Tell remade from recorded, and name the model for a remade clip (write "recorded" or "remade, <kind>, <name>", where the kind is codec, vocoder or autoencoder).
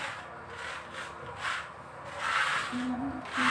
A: recorded